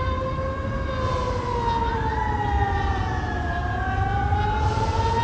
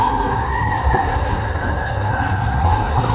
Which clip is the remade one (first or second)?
second